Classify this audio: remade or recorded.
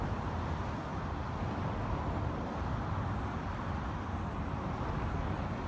recorded